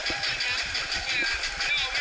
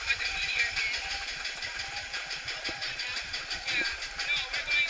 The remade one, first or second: second